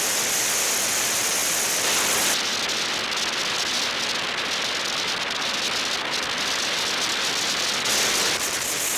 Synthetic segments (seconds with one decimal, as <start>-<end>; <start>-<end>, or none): none